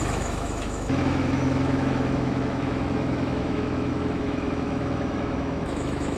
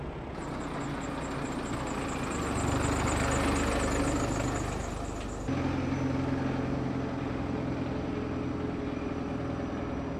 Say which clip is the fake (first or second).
first